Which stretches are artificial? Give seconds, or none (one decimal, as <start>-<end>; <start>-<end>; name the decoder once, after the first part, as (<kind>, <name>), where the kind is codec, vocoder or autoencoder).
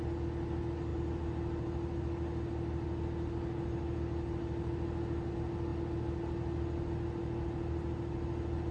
none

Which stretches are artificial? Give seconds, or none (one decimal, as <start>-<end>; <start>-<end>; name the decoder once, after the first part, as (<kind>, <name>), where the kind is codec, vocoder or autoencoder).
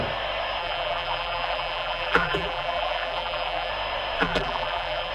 0.6-3.7 (vocoder, BigVGAN v2); 4.2-5.1